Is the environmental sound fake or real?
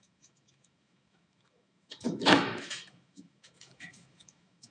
fake